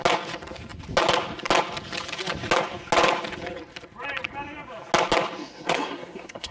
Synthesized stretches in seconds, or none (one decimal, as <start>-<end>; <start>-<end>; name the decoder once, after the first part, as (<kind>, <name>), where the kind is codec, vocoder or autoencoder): 5.4-6.5 (codec, SNAC)